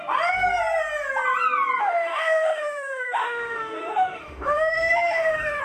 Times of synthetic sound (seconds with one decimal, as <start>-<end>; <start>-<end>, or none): 1.8-5.6